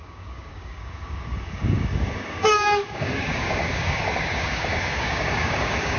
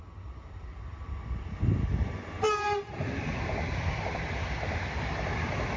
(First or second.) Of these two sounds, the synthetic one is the first